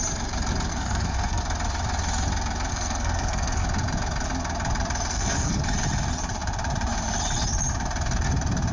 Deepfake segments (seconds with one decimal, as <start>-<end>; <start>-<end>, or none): 0.7-1.4; 2.7-3.6; 5.1-5.6

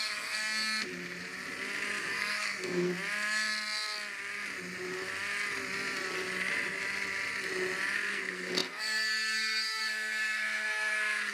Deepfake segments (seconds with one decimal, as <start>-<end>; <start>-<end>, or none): 0.0-0.4; 2.0-2.9; 8.1-11.3

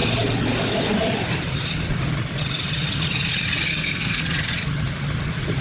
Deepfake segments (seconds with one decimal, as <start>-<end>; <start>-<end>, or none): 3.7-4.2

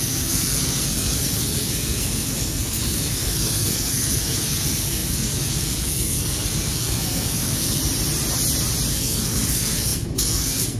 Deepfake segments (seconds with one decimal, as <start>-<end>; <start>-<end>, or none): 0.0-7.8; 8.9-10.8

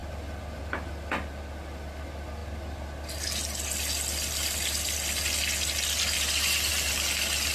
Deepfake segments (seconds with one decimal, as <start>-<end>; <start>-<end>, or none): none

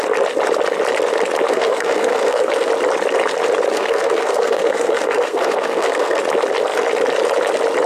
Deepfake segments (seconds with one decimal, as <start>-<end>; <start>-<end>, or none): 1.5-2.7; 3.7-6.2

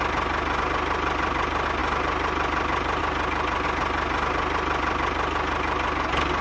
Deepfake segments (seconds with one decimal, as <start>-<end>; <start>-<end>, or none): none